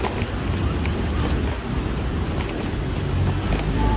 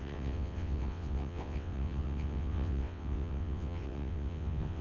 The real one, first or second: first